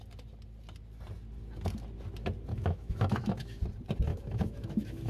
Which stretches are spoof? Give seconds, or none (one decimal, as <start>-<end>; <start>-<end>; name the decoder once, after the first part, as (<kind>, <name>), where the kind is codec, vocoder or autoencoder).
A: 2.5-3.6 (autoencoder, DAC-VAE); 4.1-5.1

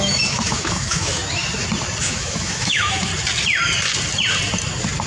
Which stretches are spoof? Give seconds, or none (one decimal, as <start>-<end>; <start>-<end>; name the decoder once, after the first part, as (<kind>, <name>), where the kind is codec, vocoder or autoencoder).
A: 0.0-1.2 (autoencoder, DAC-VAE); 2.0-3.1

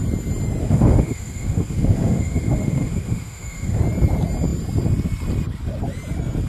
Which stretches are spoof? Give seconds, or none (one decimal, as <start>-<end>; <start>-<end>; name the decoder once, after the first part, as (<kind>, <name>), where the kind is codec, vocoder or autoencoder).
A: 0.6-3.8 (autoencoder, DAC-VAE)